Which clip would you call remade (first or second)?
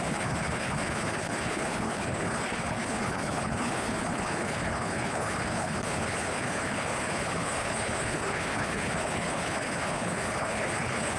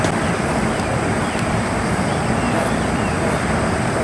first